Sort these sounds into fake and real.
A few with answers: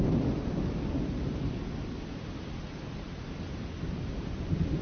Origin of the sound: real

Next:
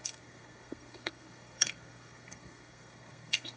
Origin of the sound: fake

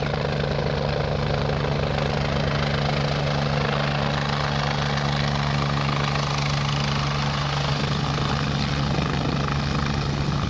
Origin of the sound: real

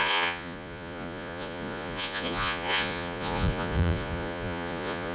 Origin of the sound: fake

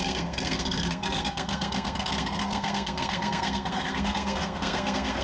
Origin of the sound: fake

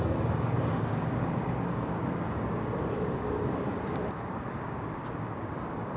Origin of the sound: fake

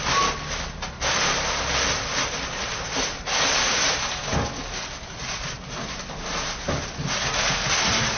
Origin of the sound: real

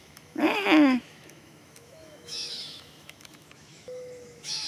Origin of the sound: fake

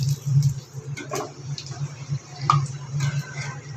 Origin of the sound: real